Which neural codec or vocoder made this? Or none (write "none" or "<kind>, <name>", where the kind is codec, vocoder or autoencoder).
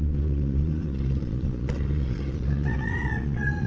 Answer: vocoder, Vocos